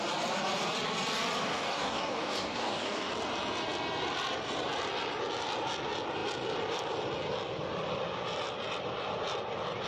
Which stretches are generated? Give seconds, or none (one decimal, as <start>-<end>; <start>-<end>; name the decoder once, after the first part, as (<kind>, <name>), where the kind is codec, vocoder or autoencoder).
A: 1.4-3.1 (codec, DAC)